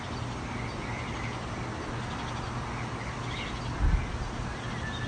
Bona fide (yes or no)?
yes